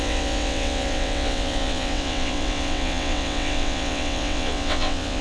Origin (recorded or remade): remade